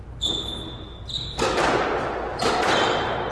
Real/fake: real